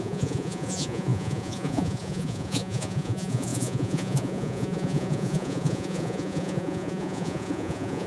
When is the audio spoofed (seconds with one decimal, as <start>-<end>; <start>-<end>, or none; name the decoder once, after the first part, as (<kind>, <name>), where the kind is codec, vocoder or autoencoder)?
0.0-8.1 (vocoder, Vocos)